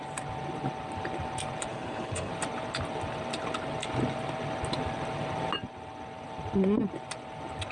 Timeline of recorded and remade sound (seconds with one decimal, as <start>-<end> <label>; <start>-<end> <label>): 0.0-1.7 recorded; 1.7-2.3 remade; 2.3-7.7 recorded